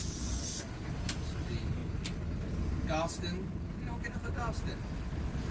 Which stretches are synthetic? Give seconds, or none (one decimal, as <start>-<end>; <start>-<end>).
none